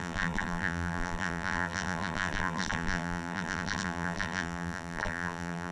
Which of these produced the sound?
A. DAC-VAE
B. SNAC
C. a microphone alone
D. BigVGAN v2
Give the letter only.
D